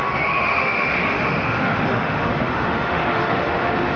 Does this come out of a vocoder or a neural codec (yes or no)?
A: yes